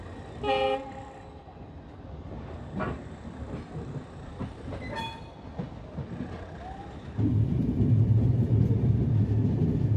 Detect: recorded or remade recorded